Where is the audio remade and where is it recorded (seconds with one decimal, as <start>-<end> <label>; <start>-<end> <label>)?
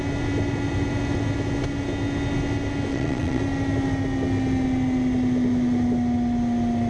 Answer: 0.0-2.9 recorded; 2.9-3.4 remade; 3.4-6.9 recorded